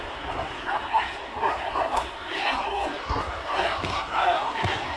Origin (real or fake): fake